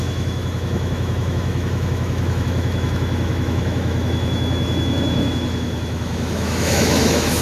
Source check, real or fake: fake